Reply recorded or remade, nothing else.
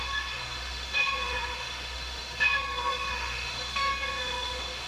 remade